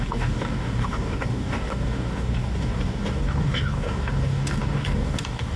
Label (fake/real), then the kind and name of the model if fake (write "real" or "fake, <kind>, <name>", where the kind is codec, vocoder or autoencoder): fake, codec, DAC